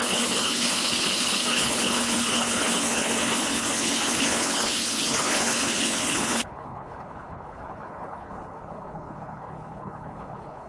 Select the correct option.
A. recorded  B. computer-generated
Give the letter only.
B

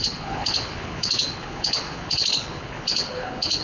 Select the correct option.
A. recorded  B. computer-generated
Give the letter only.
B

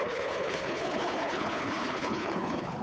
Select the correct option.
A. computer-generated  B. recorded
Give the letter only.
A